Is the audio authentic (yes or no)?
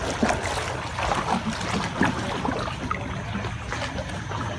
yes